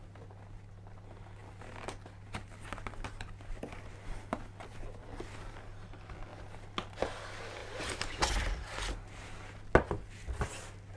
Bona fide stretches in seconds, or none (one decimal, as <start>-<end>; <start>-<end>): 0.0-11.0